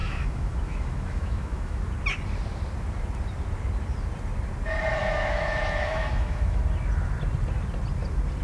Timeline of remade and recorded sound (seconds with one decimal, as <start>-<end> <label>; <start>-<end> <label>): 0.0-1.8 remade; 1.8-5.0 recorded; 5.0-6.6 remade; 6.6-8.4 recorded